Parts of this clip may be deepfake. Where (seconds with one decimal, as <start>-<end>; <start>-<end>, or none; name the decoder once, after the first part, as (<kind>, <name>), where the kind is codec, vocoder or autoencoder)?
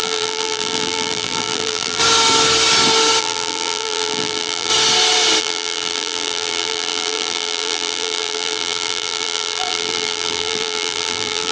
0.0-2.0 (vocoder, BigVGAN v2); 3.2-4.7; 5.4-11.5